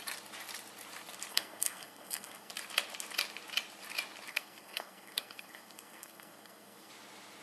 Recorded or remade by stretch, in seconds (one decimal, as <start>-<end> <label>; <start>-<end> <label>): 0.0-1.3 recorded; 1.3-2.5 remade; 2.5-4.3 recorded; 4.3-6.9 remade; 6.9-7.4 recorded